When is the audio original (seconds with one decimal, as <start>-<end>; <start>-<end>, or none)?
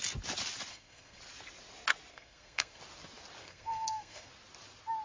0.0-0.7; 1.2-2.1; 2.8-3.4; 4.3-5.0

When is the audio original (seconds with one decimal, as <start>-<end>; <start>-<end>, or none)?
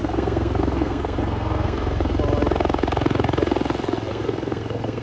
2.1-4.1